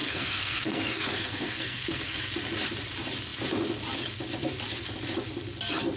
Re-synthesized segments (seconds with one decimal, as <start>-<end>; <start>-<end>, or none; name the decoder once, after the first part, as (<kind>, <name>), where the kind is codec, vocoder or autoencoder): 0.0-2.2 (codec, SNAC)